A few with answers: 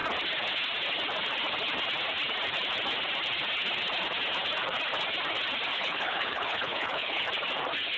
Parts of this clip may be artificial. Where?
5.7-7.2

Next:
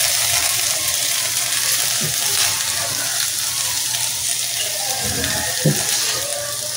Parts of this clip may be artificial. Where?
none

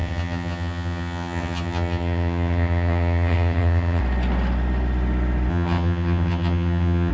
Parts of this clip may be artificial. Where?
0.0-4.0; 5.5-7.1

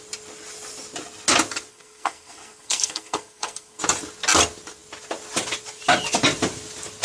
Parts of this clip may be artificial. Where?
1.7-3.8

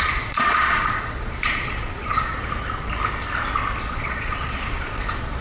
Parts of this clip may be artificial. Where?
0.0-2.3; 3.8-5.4